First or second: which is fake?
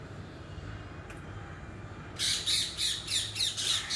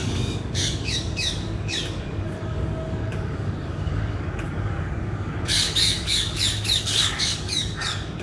second